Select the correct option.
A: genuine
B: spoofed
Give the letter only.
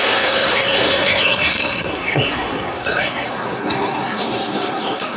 B